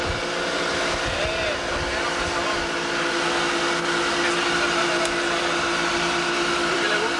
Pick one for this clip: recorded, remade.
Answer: recorded